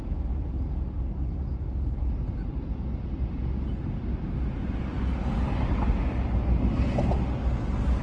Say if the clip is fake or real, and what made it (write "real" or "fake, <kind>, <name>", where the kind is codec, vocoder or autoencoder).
real